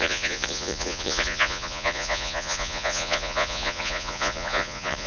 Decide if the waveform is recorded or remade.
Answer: remade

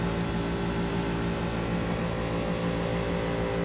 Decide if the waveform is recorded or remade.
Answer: recorded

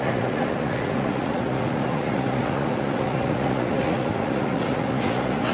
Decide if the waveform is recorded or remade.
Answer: remade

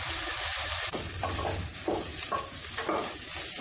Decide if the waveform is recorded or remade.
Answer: recorded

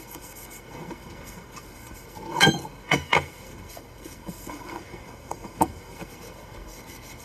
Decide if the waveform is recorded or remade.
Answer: remade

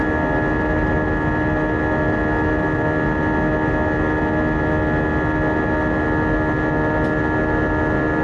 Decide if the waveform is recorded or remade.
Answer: recorded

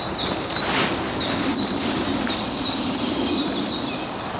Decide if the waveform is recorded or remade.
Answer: recorded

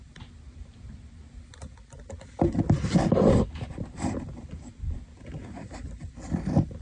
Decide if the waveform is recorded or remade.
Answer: remade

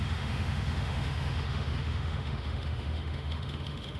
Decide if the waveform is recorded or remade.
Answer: remade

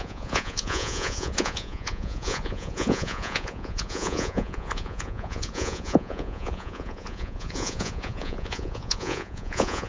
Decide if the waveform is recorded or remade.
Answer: remade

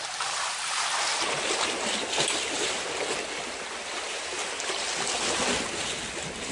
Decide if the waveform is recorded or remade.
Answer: recorded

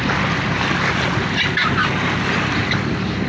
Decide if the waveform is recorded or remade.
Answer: recorded